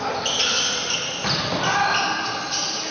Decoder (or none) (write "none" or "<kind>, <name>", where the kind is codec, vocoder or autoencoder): none